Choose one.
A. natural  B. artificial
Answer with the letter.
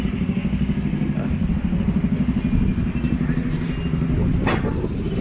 A